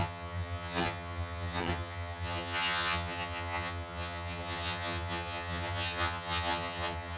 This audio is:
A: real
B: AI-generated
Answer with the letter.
B